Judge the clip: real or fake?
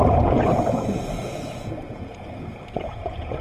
fake